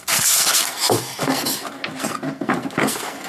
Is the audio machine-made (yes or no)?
yes